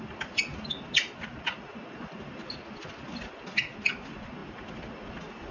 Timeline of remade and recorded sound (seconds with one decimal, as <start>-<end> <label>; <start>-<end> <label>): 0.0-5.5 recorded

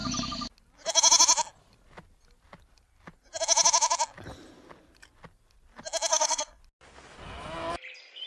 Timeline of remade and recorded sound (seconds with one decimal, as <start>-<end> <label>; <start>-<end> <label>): 0.0-6.1 recorded; 6.1-6.6 remade; 6.6-8.3 recorded

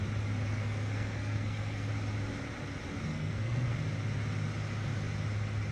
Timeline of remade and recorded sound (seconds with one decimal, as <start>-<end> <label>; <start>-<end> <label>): 0.0-0.5 recorded; 0.5-1.9 remade; 1.9-3.1 recorded; 3.1-3.8 remade; 3.8-5.7 recorded